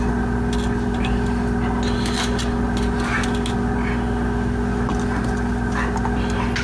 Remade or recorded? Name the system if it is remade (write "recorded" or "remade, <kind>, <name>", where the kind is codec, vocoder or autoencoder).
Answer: recorded